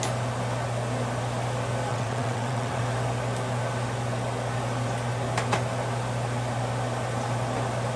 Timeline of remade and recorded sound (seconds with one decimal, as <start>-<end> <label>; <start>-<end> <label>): 0.0-1.9 recorded; 1.9-2.8 remade; 2.8-8.0 recorded